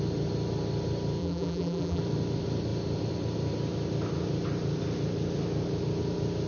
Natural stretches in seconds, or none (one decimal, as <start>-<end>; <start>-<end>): 0.0-1.2; 2.0-6.5